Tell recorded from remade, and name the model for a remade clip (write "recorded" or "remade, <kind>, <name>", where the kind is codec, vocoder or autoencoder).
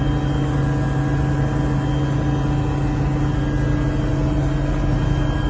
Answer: recorded